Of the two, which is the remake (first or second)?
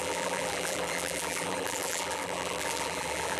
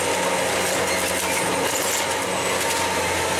first